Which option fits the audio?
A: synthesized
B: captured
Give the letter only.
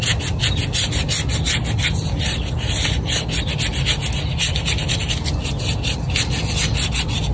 B